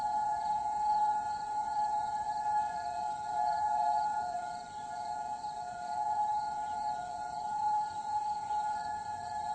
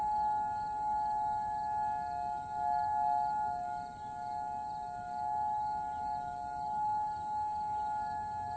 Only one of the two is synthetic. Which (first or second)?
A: first